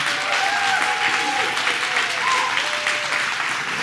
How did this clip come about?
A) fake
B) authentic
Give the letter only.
B